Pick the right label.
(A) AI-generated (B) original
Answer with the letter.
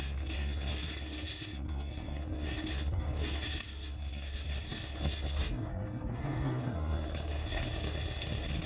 A